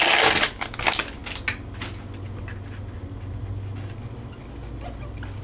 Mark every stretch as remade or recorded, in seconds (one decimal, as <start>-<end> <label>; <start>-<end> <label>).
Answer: 0.0-5.4 recorded